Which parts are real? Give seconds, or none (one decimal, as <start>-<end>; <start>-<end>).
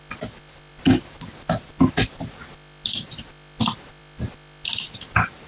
0.0-5.5